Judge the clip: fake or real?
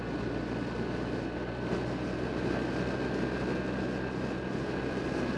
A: real